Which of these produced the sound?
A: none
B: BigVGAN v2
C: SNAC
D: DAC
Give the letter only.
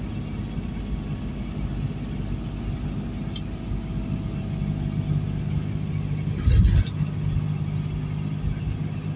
A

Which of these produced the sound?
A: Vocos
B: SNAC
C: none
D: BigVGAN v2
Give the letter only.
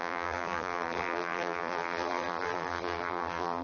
D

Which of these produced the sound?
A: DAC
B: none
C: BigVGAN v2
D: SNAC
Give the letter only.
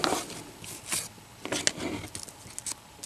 B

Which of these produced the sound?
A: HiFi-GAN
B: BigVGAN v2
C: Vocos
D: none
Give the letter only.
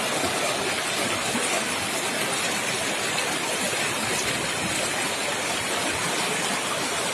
D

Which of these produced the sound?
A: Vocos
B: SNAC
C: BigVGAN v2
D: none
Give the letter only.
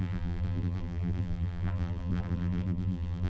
C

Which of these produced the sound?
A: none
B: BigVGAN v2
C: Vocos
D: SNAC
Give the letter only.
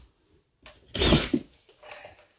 A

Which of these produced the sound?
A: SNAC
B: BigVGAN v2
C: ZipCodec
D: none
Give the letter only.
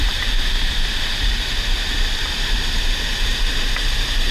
B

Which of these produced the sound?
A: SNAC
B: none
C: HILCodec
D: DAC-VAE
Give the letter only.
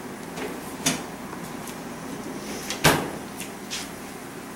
B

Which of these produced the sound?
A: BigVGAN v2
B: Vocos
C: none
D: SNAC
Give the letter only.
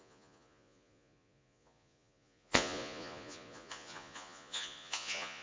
B